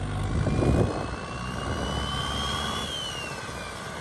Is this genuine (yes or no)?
yes